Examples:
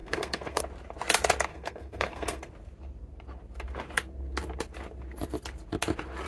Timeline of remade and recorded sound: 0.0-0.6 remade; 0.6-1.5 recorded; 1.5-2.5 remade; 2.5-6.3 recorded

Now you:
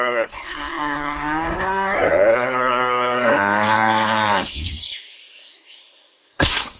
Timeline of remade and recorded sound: 0.0-6.8 remade

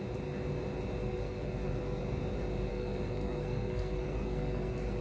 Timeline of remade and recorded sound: 0.0-1.0 recorded; 1.0-2.0 remade; 2.0-2.7 recorded; 2.7-5.0 remade

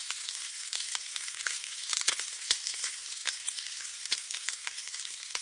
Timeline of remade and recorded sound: 0.0-5.4 remade

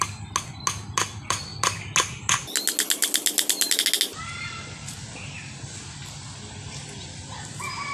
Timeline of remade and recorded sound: 0.0-7.9 recorded

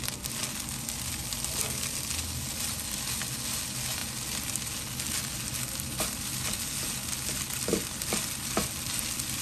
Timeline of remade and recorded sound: 0.0-9.4 recorded

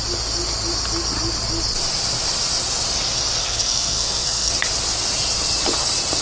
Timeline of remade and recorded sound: 0.0-3.4 recorded; 3.4-4.5 remade; 4.5-6.2 recorded